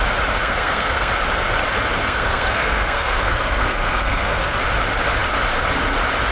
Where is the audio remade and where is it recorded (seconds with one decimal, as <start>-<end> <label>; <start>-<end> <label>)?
0.0-0.4 recorded; 0.4-1.1 remade; 1.1-2.0 recorded; 2.0-4.6 remade; 4.6-6.3 recorded